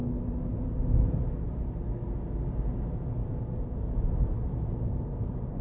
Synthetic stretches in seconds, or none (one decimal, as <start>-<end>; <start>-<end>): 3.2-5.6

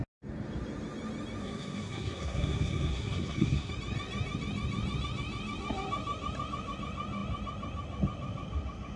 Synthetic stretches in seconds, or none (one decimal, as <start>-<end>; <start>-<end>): 1.4-3.7

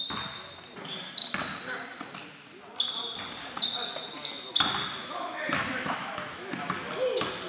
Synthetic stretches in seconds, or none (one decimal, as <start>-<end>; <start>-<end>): 5.0-6.5

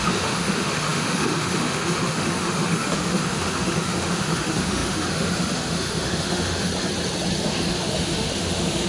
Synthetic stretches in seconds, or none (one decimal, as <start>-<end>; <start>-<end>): 0.0-6.7; 7.4-8.9

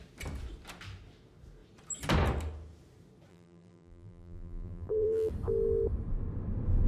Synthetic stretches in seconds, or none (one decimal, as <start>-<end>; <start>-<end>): 3.3-5.3

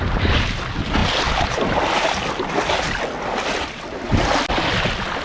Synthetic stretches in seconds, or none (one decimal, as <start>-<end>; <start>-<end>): none

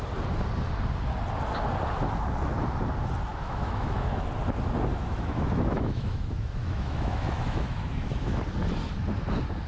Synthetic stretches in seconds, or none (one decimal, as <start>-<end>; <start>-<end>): 3.3-4.2; 4.9-8.4